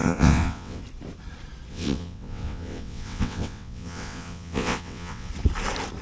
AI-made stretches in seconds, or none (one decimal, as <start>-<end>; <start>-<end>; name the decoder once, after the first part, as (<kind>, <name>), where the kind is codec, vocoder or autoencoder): 0.0-0.8 (vocoder, WaveNeXt); 1.7-5.3